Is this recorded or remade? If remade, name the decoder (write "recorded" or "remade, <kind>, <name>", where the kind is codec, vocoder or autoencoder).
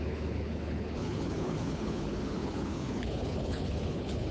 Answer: remade, codec, HILCodec